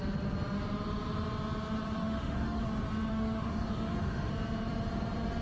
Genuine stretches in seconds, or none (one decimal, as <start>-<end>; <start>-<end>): 0.0-2.0; 2.6-3.1; 4.3-5.4